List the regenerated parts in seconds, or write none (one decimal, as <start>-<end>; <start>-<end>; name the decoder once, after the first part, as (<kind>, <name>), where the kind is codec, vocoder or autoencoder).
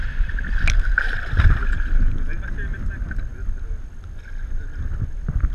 none